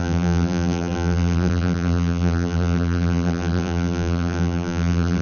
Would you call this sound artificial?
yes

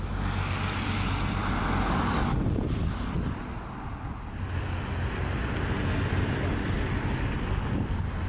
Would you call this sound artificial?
no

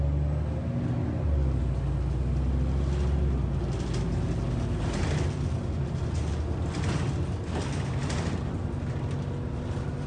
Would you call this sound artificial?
no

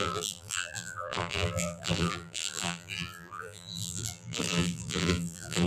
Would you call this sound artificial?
yes